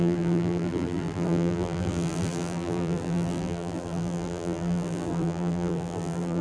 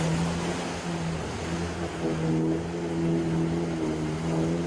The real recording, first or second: second